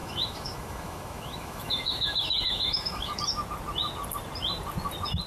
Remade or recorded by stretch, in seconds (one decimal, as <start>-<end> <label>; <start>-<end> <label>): 0.0-3.2 remade; 3.2-5.3 recorded